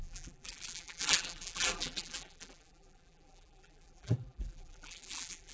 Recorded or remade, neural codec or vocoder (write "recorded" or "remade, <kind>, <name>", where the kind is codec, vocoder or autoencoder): remade, vocoder, BigVGAN v2